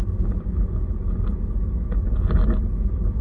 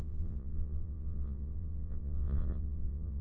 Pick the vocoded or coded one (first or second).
second